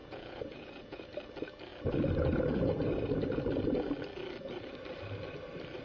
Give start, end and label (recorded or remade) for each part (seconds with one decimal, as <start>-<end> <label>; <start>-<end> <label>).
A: 0.0-1.1 remade; 1.1-5.8 recorded